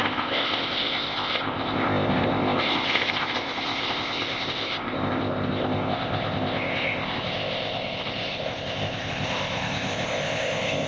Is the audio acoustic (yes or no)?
no